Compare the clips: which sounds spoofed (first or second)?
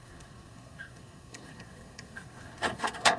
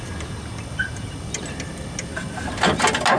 first